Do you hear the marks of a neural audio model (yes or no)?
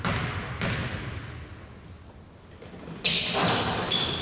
no